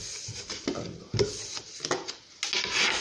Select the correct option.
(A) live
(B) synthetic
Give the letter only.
A